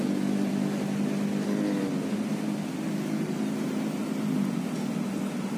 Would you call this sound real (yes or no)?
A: yes